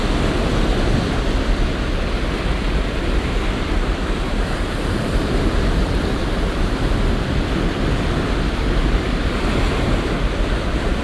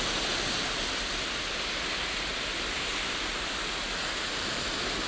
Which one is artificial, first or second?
first